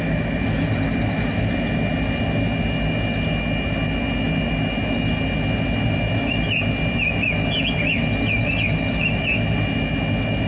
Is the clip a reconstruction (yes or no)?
no